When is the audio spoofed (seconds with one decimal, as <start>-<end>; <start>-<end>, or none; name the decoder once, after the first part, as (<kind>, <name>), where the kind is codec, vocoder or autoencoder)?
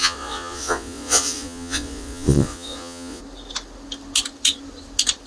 0.0-3.2 (vocoder, Vocos)